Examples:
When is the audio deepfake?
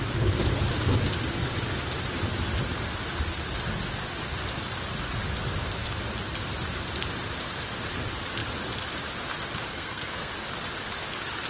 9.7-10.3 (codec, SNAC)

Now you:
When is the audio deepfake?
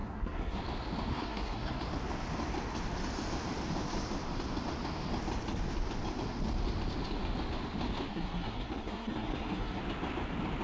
0.0-0.6 (codec, SNAC); 1.1-1.8; 8.1-9.8